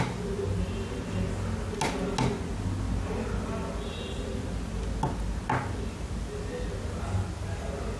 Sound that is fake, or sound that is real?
real